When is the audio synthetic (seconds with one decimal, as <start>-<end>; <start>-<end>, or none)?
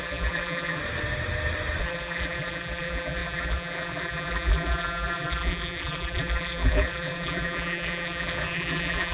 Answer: 0.0-0.8; 1.8-9.1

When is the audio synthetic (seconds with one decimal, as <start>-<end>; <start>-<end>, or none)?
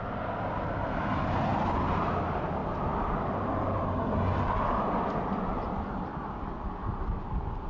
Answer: none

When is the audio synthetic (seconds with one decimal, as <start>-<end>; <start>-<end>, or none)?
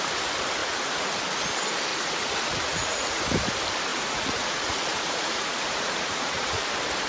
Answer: 0.6-1.2; 1.9-3.2; 3.9-6.6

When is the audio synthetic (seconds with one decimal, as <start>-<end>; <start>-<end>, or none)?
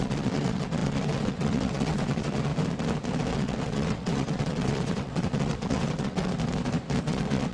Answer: 0.0-2.5; 3.3-6.3; 7.0-7.5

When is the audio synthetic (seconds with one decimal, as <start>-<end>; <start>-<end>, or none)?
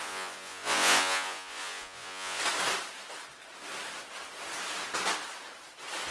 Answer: 0.0-2.4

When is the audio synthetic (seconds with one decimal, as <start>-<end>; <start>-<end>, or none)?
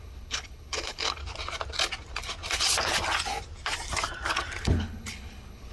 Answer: 0.0-1.2; 4.6-5.7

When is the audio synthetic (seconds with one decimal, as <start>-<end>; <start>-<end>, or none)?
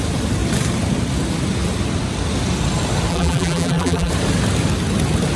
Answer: 3.1-4.1